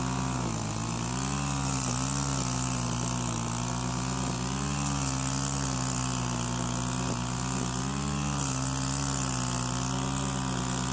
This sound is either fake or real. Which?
real